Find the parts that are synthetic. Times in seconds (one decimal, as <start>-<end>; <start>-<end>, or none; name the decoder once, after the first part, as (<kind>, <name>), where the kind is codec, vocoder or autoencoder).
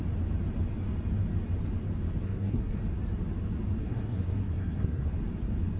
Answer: 2.2-2.8 (codec, SNAC); 3.8-5.1